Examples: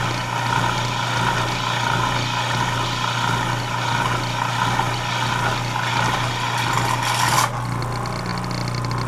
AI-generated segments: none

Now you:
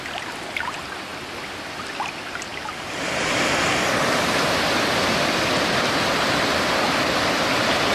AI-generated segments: none

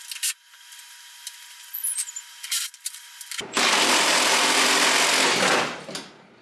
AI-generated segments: 1.2-5.0 (vocoder, BigVGAN v2)

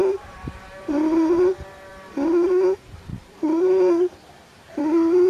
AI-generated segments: 0.0-1.5 (vocoder, BigVGAN v2); 3.1-4.8

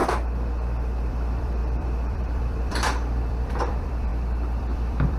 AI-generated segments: 1.1-5.2 (vocoder, BigVGAN v2)

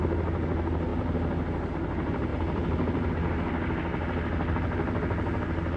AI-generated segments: 2.3-3.1 (vocoder, BigVGAN v2)

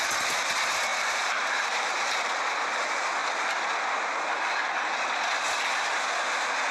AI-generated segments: 0.9-2.3 (vocoder, BigVGAN v2)